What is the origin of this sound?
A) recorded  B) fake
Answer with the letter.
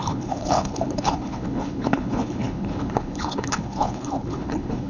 B